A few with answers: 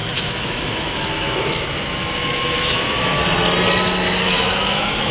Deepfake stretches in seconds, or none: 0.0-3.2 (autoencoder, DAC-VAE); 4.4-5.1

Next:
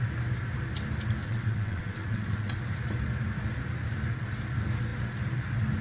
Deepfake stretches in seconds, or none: 1.2-2.6 (vocoder, WaveNeXt)

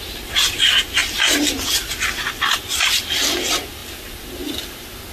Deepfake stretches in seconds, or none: none

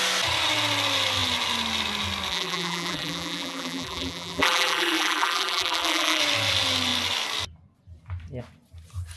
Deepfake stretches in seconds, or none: 2.3-6.2 (vocoder, BigVGAN v2)

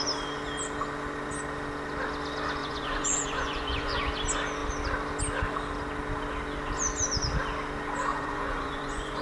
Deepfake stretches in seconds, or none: 2.6-4.1 (vocoder, Vocos); 8.1-9.2

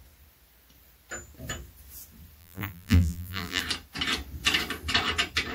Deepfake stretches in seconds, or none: 2.4-3.6 (vocoder, BigVGAN v2)